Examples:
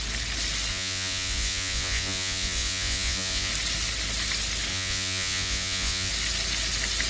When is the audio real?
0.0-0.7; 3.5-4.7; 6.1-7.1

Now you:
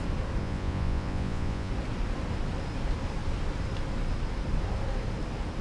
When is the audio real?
0.0-0.4; 1.7-5.6

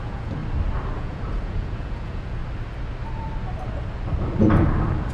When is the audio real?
0.4-1.0; 2.4-5.1

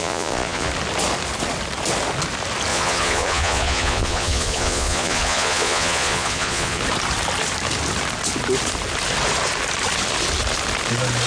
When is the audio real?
0.7-2.7; 6.8-11.3